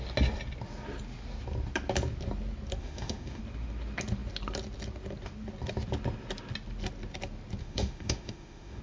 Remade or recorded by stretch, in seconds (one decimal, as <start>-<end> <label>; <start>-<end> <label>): 0.0-2.8 recorded; 2.8-3.4 remade; 3.4-7.6 recorded; 7.6-8.8 remade